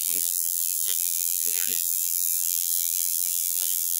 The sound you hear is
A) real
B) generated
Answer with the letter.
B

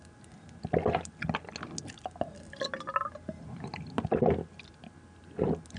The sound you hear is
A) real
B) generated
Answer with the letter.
A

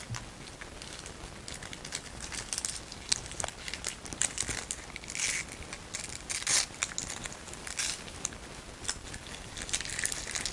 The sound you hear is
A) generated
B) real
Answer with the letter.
B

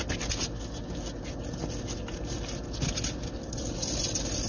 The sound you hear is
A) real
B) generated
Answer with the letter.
A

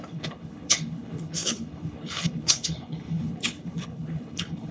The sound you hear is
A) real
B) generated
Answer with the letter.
B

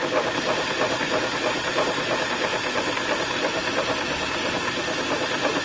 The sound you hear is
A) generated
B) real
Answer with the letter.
B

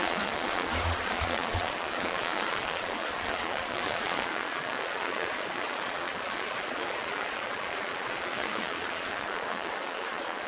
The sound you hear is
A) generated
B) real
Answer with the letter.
A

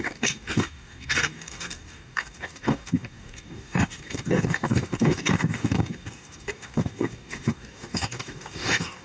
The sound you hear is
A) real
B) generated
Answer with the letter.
B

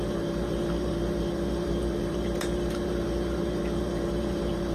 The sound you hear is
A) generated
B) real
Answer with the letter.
A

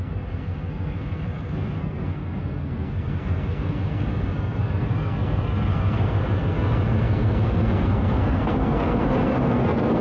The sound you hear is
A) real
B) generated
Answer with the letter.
B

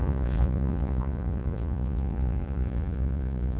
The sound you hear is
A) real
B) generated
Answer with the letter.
B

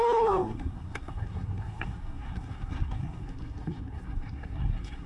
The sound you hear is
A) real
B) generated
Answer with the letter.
B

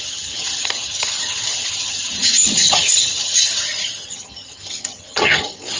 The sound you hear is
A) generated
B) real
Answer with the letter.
A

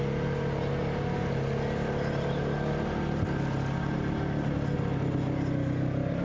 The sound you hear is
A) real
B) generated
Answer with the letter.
A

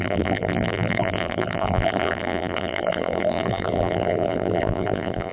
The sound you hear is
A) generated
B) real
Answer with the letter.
A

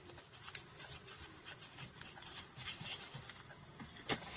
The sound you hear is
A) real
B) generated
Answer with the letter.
A